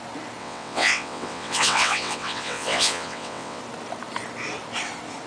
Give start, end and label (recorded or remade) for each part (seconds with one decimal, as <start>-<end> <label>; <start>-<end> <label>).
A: 0.0-0.4 recorded; 0.4-3.6 remade; 3.6-5.3 recorded